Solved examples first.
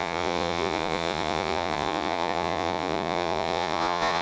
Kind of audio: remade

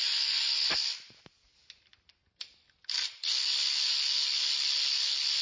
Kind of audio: recorded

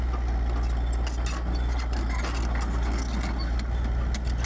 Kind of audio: recorded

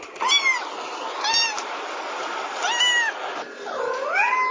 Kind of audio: recorded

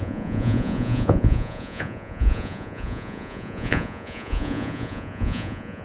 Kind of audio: remade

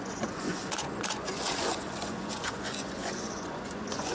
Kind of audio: remade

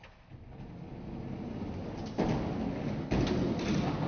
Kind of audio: recorded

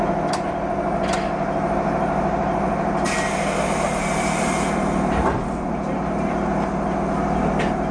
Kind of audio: recorded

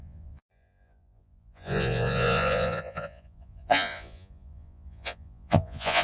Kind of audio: remade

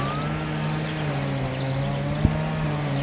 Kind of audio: recorded